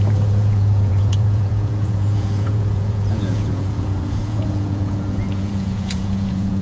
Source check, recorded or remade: remade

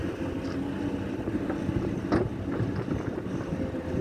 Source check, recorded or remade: recorded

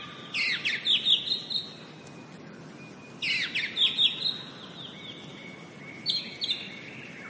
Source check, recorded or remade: recorded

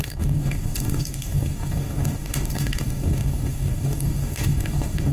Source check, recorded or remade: remade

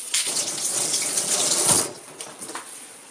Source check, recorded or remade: remade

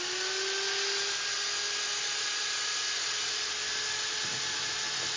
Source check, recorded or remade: recorded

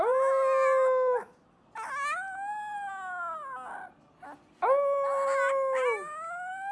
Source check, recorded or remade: recorded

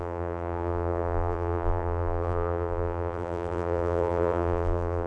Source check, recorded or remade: remade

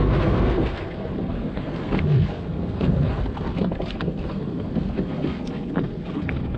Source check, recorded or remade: remade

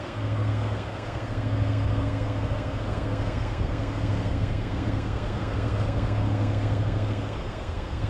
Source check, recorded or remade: remade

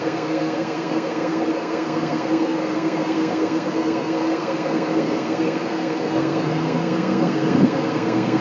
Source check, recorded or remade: remade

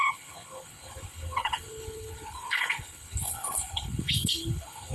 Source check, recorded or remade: remade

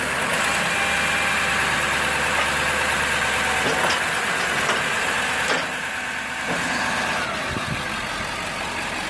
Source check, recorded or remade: recorded